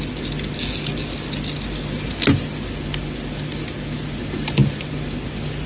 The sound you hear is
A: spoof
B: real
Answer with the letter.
B